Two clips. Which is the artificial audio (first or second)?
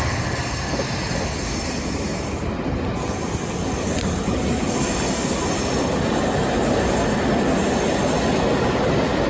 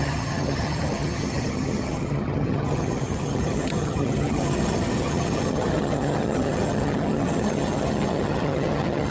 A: second